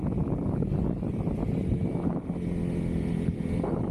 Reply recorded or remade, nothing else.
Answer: recorded